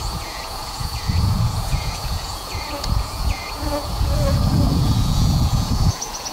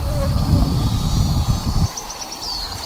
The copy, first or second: first